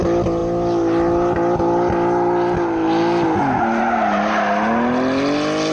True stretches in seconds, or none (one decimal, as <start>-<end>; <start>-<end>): 0.0-5.7